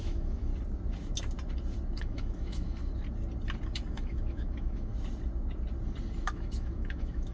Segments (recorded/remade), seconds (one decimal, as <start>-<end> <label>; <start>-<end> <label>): 0.0-0.5 remade; 0.5-2.0 recorded; 2.0-2.8 remade; 2.8-3.9 recorded; 3.9-4.9 remade; 4.9-6.1 recorded; 6.1-7.3 remade